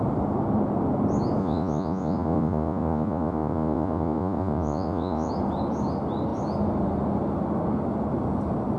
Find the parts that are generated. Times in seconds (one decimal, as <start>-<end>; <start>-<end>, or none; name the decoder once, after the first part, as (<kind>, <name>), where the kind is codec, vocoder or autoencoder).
1.4-5.3 (vocoder, Vocos)